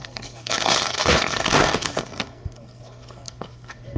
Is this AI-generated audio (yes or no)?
yes